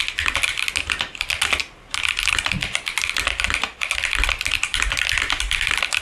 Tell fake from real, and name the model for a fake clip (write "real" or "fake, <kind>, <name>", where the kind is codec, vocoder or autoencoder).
real